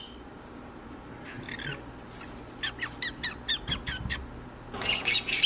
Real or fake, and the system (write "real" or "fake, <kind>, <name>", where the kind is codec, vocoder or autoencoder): real